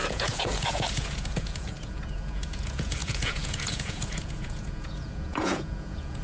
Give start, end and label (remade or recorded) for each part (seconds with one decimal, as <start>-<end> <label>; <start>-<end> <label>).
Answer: 0.0-6.2 remade